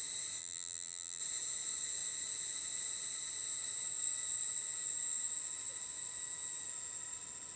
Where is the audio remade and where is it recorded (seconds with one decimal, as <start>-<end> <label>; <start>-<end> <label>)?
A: 0.0-0.4 recorded; 0.4-1.2 remade; 1.2-7.6 recorded